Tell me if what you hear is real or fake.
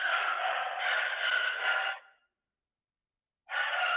real